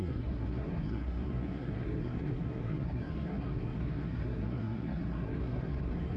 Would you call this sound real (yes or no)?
no